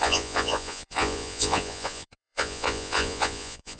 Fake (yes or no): yes